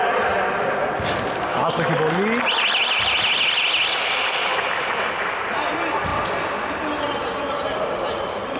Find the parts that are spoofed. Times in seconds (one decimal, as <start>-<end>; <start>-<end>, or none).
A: none